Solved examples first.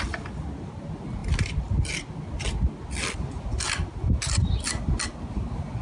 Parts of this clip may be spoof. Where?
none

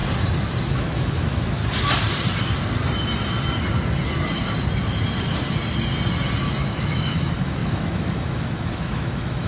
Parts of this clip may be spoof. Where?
0.7-1.6 (autoencoder, DAC-VAE); 6.6-9.5

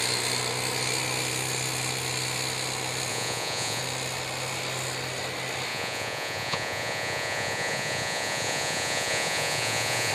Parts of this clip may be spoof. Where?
3.1-3.8 (vocoder, Vocos); 5.7-10.1